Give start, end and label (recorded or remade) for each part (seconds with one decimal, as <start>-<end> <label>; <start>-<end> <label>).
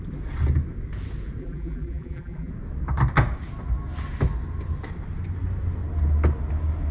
0.0-1.4 recorded; 1.4-2.5 remade; 2.5-6.9 recorded